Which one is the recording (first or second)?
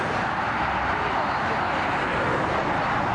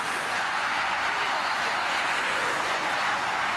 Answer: first